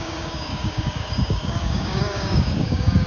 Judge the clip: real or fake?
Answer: fake